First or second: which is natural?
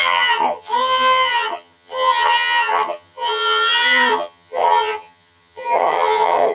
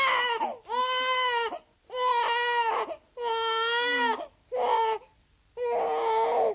second